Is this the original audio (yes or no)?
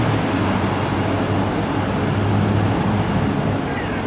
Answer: yes